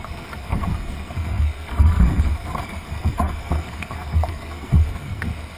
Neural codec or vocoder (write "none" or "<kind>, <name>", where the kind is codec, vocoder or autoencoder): codec, SNAC